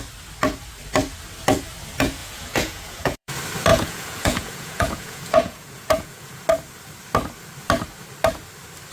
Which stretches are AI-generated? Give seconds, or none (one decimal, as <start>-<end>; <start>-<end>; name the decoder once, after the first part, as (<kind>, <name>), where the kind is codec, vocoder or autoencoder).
2.2-3.3 (vocoder, Vocos); 3.7-6.4